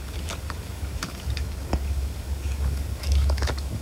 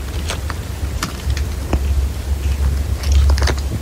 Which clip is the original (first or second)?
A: second